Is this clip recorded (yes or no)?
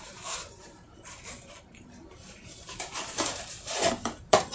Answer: no